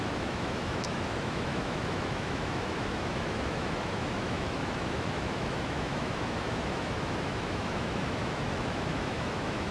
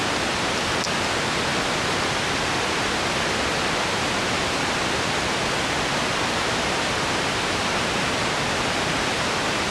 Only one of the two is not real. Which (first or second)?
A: first